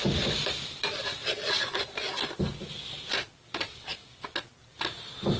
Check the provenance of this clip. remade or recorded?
recorded